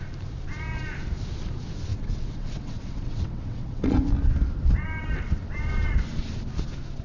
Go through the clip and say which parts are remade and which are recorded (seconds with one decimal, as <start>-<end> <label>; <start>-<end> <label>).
0.0-1.9 recorded; 1.9-4.1 remade; 4.1-7.0 recorded